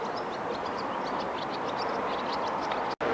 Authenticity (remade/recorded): recorded